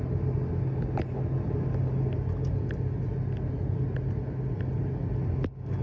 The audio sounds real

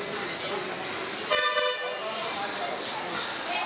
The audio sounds real